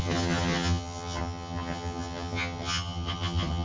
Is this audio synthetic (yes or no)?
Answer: yes